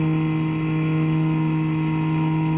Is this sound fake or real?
real